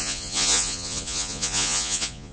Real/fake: fake